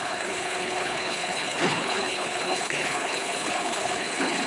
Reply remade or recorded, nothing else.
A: remade